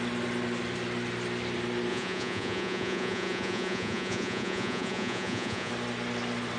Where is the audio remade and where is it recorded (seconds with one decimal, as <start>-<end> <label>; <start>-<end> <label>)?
0.0-1.9 recorded; 1.9-5.7 remade; 5.7-6.6 recorded